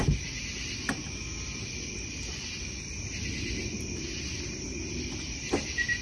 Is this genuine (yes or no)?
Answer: yes